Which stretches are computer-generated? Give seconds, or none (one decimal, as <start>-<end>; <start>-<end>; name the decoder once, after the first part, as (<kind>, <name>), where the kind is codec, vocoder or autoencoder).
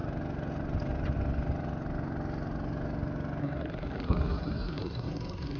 3.4-5.6 (codec, SNAC)